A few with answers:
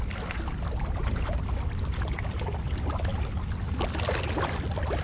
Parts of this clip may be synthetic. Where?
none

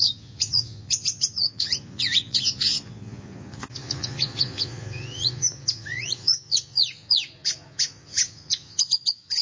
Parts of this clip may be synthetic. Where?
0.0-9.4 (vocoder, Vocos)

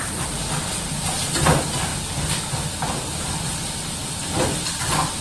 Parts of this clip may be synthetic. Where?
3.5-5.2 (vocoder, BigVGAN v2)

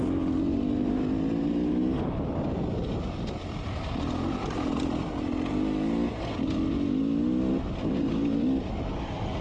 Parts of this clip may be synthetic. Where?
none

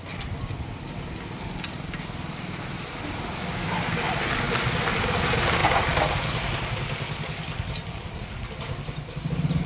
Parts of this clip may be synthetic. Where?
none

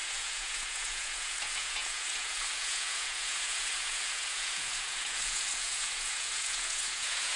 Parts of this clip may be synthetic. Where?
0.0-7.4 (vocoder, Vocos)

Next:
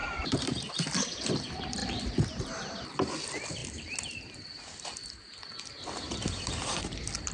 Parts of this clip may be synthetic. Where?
0.0-1.3 (vocoder, BigVGAN v2); 1.8-3.1